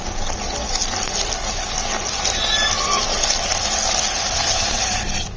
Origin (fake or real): real